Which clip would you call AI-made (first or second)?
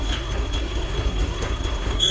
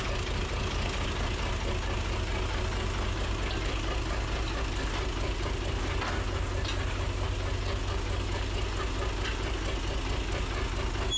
first